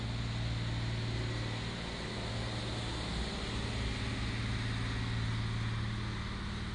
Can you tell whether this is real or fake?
real